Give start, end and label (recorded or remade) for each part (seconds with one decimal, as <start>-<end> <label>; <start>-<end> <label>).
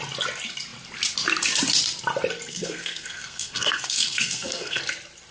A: 0.0-2.5 recorded; 2.5-4.8 remade; 4.8-5.3 recorded